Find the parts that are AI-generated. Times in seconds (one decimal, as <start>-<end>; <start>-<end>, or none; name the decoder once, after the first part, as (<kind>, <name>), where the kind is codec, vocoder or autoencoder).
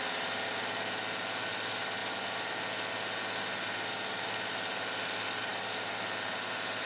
none